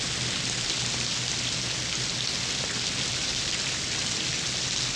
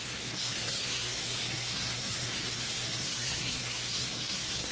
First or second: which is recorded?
first